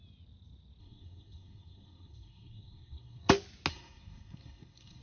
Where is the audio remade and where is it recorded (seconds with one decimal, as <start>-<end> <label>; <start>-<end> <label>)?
0.0-0.8 recorded; 0.8-3.3 remade; 3.3-3.7 recorded; 3.7-5.0 remade